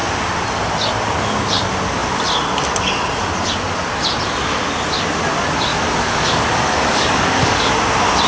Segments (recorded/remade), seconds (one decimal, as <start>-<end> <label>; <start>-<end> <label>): 0.0-5.7 recorded; 5.7-7.7 remade; 7.7-8.3 recorded